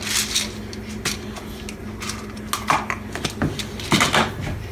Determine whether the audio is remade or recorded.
recorded